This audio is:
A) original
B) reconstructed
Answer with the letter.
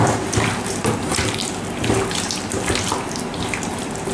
A